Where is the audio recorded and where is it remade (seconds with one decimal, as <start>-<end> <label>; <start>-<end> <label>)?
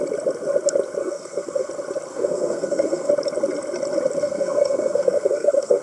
0.0-1.0 recorded; 1.0-1.7 remade; 1.7-2.1 recorded; 2.1-3.1 remade; 3.1-4.2 recorded; 4.2-5.8 remade